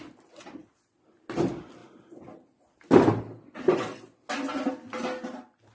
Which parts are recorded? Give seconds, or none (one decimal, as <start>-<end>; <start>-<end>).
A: 0.0-5.7